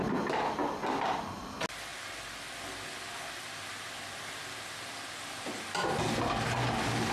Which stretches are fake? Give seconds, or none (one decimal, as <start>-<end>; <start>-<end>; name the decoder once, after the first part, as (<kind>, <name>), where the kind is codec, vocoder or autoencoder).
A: none